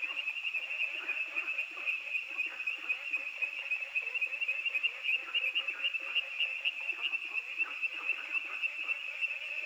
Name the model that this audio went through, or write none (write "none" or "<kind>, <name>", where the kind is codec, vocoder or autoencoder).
none